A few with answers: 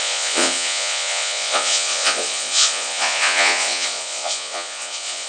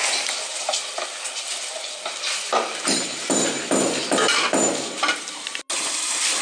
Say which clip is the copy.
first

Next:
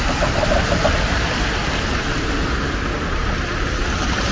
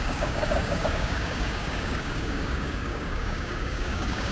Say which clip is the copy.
second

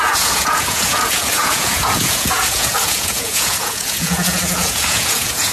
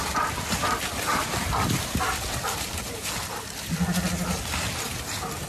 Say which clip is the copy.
first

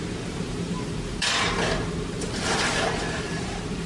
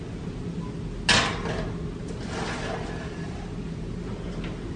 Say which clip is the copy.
first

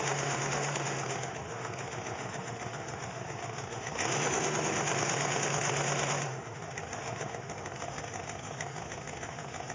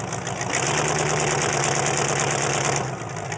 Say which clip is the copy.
first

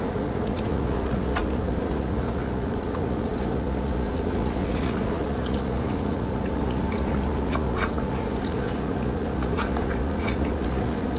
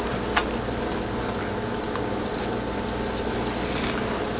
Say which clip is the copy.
first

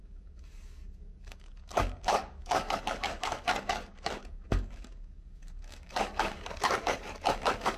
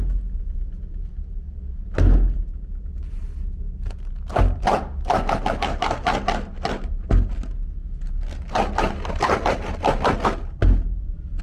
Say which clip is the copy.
first